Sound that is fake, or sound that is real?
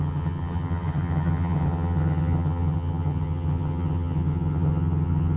fake